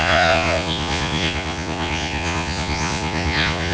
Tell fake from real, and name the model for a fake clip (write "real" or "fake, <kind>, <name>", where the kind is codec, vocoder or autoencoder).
fake, vocoder, Vocos